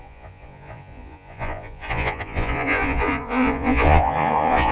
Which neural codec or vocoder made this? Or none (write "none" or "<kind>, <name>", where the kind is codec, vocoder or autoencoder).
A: vocoder, Vocos